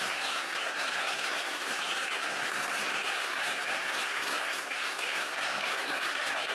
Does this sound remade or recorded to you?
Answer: remade